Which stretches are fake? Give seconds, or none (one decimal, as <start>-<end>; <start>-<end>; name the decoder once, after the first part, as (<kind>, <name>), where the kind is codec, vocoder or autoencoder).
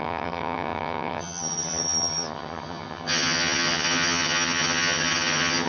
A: 0.0-5.7 (vocoder, HiFi-GAN)